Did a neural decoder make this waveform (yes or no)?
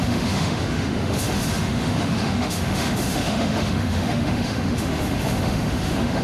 yes